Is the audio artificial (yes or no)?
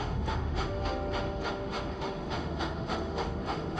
yes